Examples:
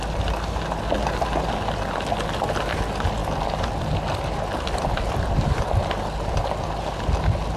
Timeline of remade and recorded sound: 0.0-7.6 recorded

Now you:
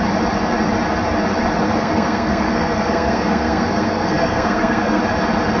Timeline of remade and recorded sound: 0.0-1.6 recorded; 1.6-5.0 remade; 5.0-5.6 recorded

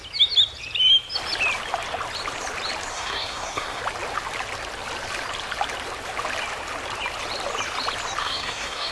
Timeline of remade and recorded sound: 0.0-2.9 recorded; 2.9-3.8 remade; 3.8-8.2 recorded; 8.2-8.9 remade

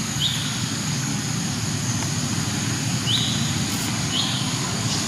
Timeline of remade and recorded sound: 0.0-1.1 remade; 1.1-4.0 recorded; 4.0-5.1 remade